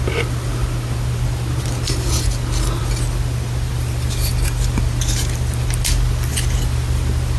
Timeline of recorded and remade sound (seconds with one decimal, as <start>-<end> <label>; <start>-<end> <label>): 0.0-7.4 recorded